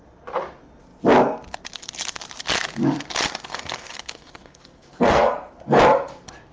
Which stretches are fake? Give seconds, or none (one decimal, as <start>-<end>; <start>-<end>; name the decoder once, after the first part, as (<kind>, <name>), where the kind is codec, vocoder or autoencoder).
3.5-5.5 (codec, SNAC)